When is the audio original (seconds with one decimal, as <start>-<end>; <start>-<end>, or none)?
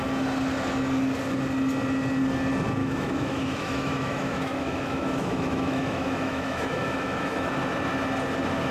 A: 0.0-2.8; 7.5-8.7